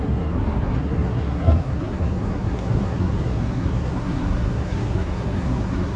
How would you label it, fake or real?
fake